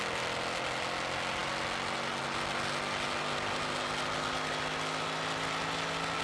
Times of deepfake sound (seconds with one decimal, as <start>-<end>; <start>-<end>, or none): none